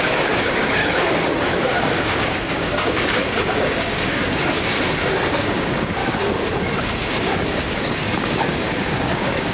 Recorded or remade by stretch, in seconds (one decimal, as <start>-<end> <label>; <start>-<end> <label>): 0.0-0.8 remade; 0.8-1.5 recorded; 1.5-4.7 remade; 4.7-5.4 recorded; 5.4-6.0 remade; 6.0-6.8 recorded; 6.8-9.5 remade